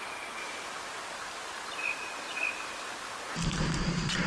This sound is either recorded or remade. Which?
recorded